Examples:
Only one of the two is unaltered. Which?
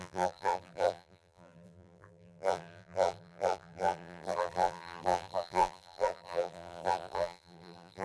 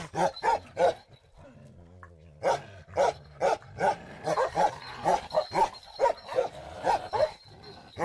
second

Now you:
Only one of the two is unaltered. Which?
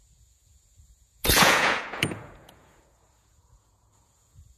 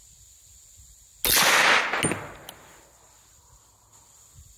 second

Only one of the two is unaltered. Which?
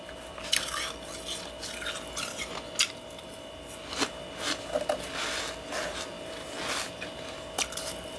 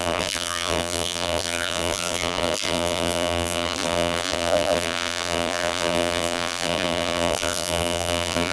first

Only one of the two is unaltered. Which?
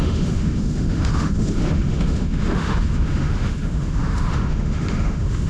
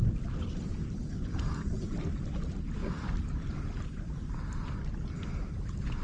second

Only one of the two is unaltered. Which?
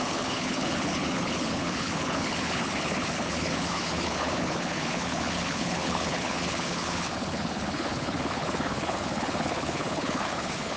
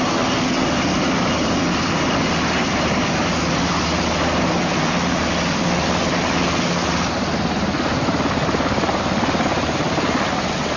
second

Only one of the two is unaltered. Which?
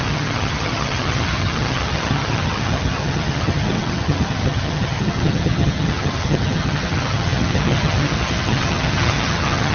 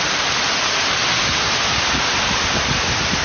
second